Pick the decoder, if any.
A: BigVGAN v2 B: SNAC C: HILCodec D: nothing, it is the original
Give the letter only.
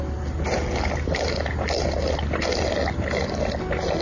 D